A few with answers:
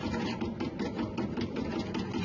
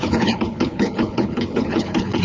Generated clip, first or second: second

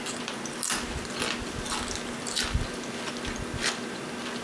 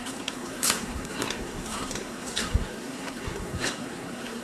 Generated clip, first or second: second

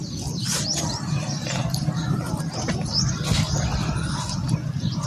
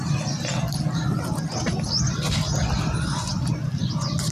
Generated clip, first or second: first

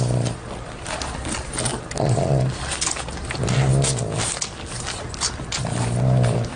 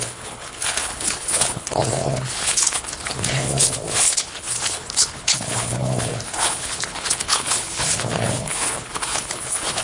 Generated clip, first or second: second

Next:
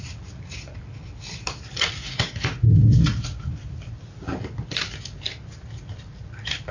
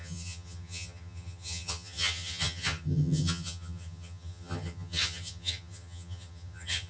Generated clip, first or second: second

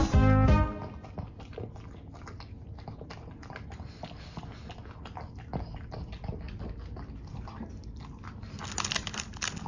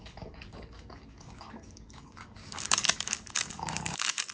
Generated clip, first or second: second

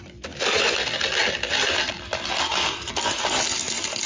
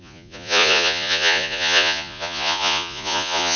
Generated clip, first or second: second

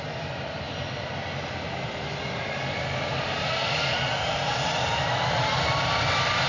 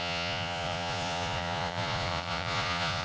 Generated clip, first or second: second